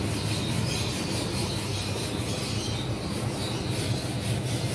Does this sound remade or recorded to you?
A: recorded